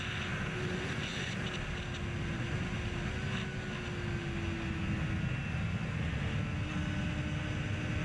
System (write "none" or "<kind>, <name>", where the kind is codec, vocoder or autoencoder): none